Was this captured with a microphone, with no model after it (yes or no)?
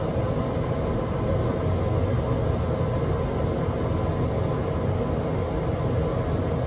yes